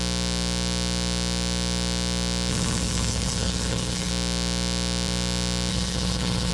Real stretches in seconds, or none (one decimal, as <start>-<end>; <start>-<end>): 0.0-2.5; 4.1-5.7